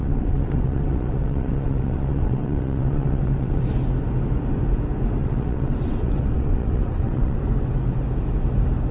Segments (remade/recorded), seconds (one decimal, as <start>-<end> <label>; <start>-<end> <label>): 0.0-3.6 remade; 3.6-5.2 recorded; 5.2-7.4 remade; 7.4-8.9 recorded